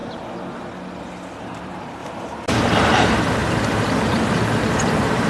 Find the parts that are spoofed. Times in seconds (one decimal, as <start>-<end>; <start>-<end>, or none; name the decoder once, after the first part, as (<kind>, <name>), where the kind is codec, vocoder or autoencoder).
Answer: 1.4-2.0 (vocoder, BigVGAN v2); 2.5-5.3